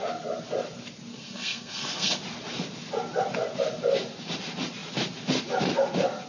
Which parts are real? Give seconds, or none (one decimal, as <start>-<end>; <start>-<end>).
0.0-1.1; 2.2-6.3